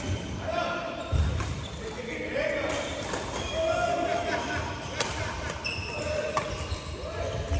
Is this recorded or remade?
recorded